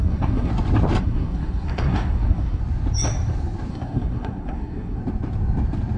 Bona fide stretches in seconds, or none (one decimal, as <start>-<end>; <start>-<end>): 0.5-1.0; 2.6-3.7; 5.0-6.0